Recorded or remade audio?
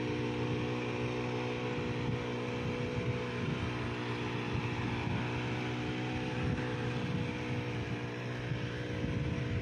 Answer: recorded